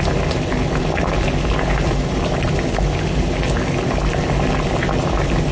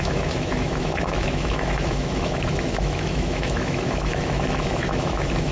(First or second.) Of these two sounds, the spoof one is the second